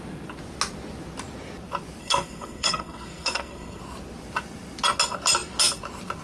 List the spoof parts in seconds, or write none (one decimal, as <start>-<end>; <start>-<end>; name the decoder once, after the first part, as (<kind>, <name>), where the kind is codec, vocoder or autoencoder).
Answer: 2.0-3.8 (codec, SNAC)

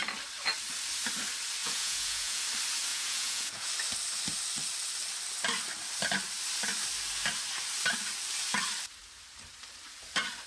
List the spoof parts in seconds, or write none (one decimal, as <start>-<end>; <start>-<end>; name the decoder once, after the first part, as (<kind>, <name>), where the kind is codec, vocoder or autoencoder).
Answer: 1.6-2.4 (vocoder, Vocos); 2.9-3.7